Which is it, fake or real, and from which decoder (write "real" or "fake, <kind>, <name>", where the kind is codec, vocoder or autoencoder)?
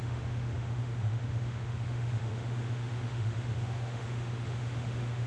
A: fake, autoencoder, DAC-VAE